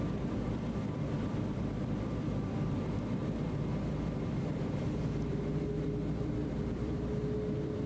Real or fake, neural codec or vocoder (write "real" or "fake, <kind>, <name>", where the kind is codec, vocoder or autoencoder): fake, vocoder, BigVGAN v2